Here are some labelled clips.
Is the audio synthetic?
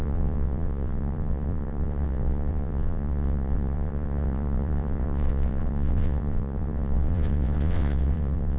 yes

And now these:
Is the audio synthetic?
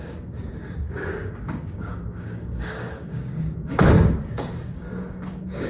yes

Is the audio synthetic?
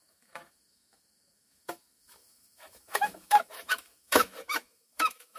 yes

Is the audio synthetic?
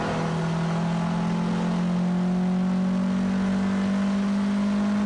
no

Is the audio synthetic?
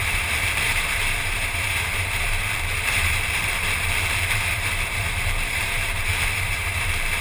yes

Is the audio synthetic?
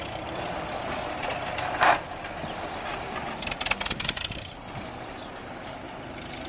no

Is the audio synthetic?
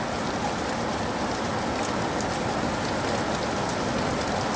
no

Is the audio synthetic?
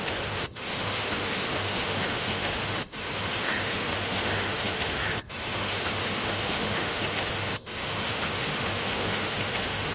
yes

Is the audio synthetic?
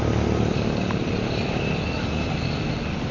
no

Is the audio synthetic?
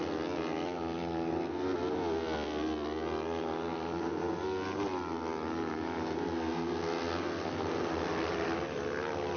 no